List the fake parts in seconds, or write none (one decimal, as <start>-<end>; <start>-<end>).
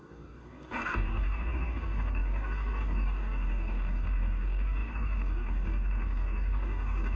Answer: 0.0-7.2